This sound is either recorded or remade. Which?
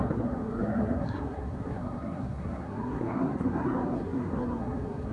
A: remade